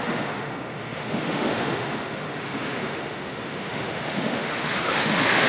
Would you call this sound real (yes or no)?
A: no